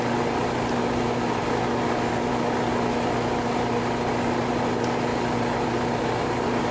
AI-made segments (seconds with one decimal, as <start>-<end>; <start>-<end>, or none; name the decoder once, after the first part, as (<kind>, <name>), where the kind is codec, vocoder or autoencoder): none